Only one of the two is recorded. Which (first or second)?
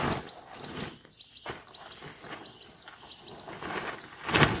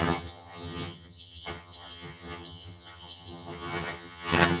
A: first